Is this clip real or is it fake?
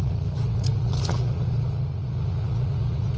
fake